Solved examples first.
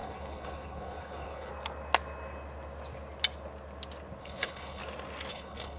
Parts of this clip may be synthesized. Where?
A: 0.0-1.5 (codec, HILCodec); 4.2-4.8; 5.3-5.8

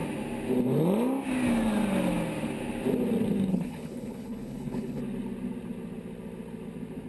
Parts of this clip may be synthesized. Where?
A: 3.5-5.0 (codec, HILCodec)